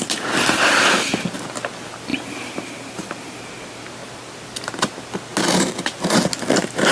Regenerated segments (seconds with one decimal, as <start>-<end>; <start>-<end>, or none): 2.1-3.4